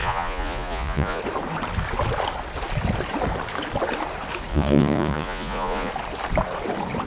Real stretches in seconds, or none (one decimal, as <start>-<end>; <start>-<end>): 1.2-4.5; 5.9-7.1